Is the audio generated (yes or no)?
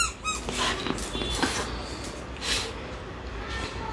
no